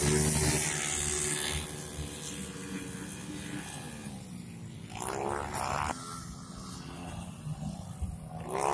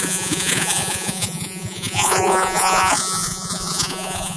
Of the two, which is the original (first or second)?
first